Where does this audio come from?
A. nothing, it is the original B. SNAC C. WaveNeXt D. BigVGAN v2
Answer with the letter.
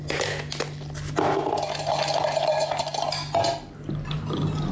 A